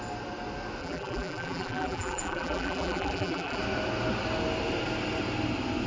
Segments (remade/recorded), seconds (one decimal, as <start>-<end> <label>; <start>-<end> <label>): 0.0-0.8 recorded; 0.8-3.6 remade; 3.6-5.9 recorded